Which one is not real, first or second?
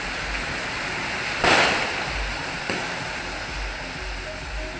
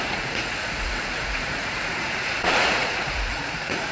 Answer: second